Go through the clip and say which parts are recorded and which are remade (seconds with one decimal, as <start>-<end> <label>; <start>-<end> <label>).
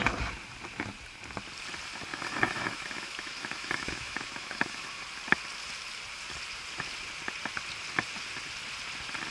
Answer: 0.0-2.1 recorded; 2.1-5.0 remade; 5.0-9.3 recorded